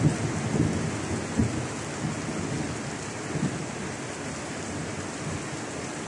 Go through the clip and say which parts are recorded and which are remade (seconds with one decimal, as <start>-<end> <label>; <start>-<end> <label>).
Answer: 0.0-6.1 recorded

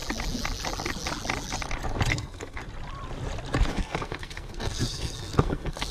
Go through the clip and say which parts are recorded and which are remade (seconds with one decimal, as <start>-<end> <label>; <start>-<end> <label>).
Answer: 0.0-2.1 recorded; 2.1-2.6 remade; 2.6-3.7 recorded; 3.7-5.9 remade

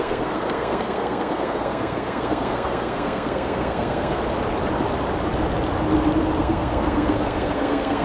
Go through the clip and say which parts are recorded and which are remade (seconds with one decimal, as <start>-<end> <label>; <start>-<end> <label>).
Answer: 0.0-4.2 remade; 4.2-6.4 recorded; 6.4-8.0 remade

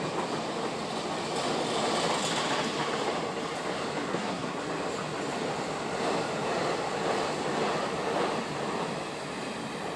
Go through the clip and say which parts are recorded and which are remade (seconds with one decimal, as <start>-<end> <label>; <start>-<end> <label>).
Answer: 0.0-4.1 recorded; 4.1-4.6 remade; 4.6-10.0 recorded

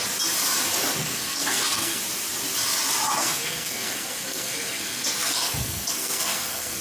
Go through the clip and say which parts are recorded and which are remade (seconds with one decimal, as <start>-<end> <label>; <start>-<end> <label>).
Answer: 0.0-1.0 recorded; 1.0-2.0 remade; 2.0-3.2 recorded; 3.2-6.8 remade

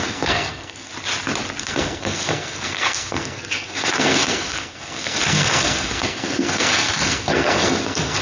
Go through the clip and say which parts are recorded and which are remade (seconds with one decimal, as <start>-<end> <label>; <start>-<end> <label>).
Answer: 0.0-0.9 remade; 0.9-1.6 recorded; 1.6-8.2 remade

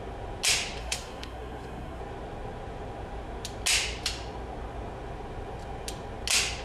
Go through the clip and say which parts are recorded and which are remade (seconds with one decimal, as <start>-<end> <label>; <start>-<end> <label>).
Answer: 0.0-0.8 recorded; 0.8-2.0 remade; 2.0-6.6 recorded